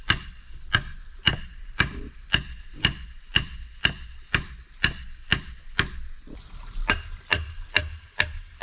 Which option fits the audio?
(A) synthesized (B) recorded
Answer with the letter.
B